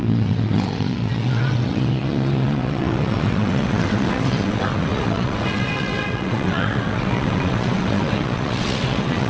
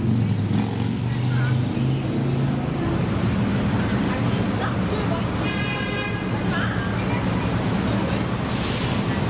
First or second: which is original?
second